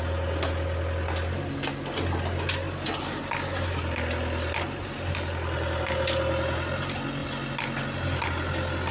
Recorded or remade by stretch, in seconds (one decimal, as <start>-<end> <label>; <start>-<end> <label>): 0.0-8.9 recorded

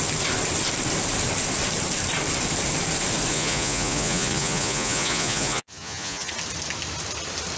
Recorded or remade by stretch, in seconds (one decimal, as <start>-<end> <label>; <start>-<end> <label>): 0.0-3.3 recorded; 3.3-6.3 remade; 6.3-7.6 recorded

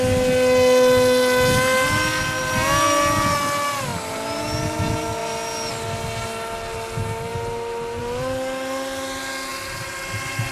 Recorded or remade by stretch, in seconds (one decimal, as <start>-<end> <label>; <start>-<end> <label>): 0.0-10.5 recorded

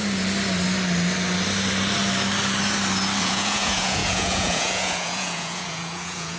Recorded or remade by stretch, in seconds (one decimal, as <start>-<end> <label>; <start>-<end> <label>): 0.0-3.2 recorded; 3.2-6.4 remade

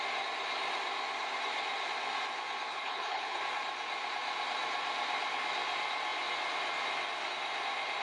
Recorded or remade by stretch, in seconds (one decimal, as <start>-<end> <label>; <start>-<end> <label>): 0.0-2.7 recorded; 2.7-3.4 remade; 3.4-8.0 recorded

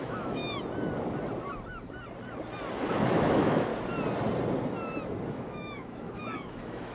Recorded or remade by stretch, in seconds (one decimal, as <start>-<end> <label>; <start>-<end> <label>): 0.0-0.4 remade; 0.4-2.9 recorded; 2.9-3.7 remade; 3.7-5.3 recorded; 5.3-6.9 remade

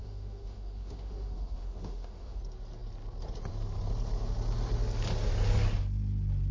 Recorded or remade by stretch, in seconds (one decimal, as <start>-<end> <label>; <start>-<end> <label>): 0.0-2.4 remade; 2.4-6.5 recorded

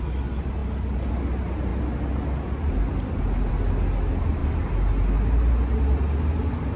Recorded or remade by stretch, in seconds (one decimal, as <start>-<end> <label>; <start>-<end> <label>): 0.0-6.8 recorded